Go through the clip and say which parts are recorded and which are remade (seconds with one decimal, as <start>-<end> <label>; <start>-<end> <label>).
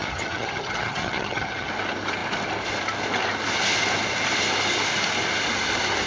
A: 0.0-1.7 remade; 1.7-6.1 recorded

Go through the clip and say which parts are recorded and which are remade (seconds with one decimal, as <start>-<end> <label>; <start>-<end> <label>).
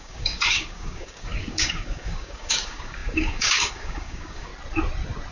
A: 0.0-4.5 remade; 4.5-5.3 recorded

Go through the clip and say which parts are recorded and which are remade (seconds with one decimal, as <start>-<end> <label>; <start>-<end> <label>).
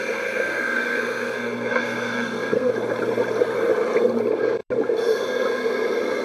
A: 0.0-0.4 recorded; 0.4-2.7 remade; 2.7-6.2 recorded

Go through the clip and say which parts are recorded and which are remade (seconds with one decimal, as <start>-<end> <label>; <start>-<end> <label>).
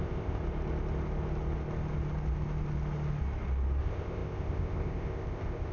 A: 0.0-0.4 remade; 0.4-3.8 recorded; 3.8-5.7 remade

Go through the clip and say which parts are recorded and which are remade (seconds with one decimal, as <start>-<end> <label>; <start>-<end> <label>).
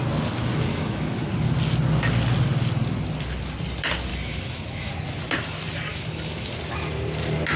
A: 0.0-0.7 recorded; 0.7-1.3 remade; 1.3-4.1 recorded; 4.1-4.9 remade; 4.9-5.9 recorded; 5.9-6.5 remade; 6.5-7.6 recorded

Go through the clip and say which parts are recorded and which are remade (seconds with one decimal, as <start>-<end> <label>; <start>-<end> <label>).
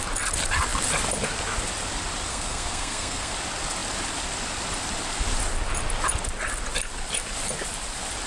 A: 0.0-2.3 recorded; 2.3-3.3 remade; 3.3-8.3 recorded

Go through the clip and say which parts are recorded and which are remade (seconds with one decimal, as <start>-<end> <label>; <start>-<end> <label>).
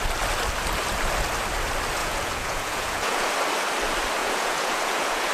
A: 0.0-2.0 recorded; 2.0-3.3 remade; 3.3-4.2 recorded; 4.2-5.3 remade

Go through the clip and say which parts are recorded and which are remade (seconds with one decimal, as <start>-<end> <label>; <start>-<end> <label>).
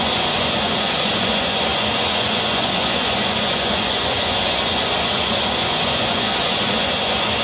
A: 0.0-7.4 remade